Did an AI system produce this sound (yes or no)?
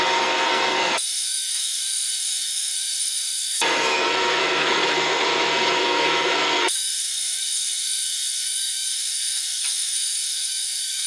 yes